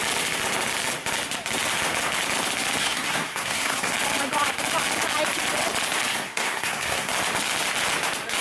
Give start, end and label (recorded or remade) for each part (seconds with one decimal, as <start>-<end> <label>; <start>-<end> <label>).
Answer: 0.0-2.8 recorded; 2.8-3.9 remade; 3.9-6.1 recorded; 6.1-7.1 remade; 7.1-8.4 recorded